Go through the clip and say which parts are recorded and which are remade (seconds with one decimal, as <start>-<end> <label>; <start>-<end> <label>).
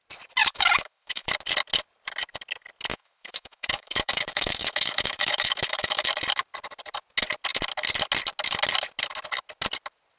0.0-0.4 recorded; 0.4-1.3 remade; 1.3-2.9 recorded; 2.9-6.1 remade; 6.1-10.2 recorded